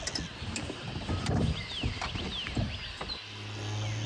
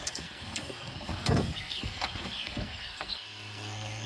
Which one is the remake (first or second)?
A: second